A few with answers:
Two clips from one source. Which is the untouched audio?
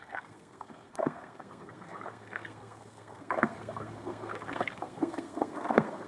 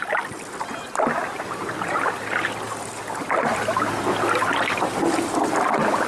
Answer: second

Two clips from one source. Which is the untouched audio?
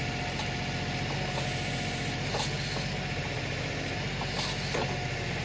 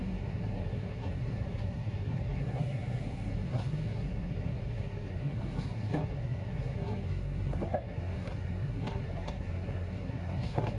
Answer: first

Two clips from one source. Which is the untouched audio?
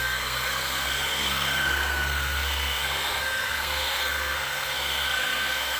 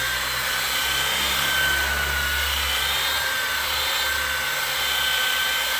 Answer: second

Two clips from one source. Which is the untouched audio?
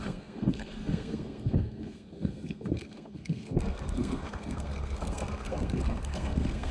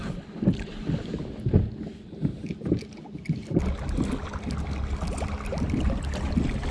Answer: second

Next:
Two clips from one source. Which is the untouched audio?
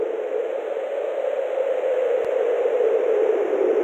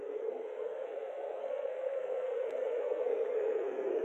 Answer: first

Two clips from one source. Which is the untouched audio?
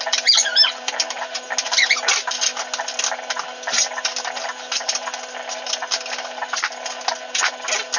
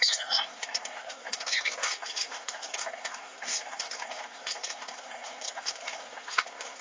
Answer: first